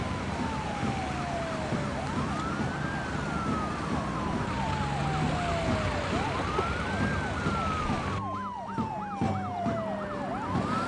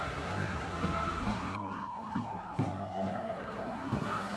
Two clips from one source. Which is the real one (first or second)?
first